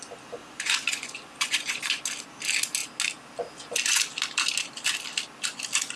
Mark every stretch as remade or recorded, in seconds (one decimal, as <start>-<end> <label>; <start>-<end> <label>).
0.0-0.4 recorded; 0.4-2.0 remade; 2.0-6.0 recorded